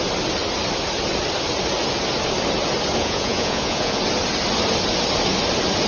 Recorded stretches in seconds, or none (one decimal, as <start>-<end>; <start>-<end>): 0.0-3.0; 4.0-5.9